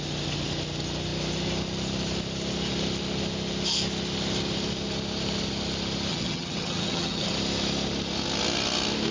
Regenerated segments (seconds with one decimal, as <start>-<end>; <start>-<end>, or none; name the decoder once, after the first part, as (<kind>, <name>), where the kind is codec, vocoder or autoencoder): 6.1-7.3 (vocoder, HiFi-GAN)